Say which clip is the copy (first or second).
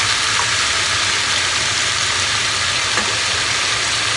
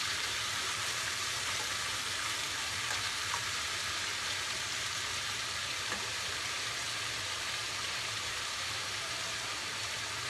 second